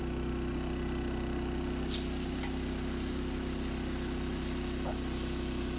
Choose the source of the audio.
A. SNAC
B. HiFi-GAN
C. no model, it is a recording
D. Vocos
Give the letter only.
C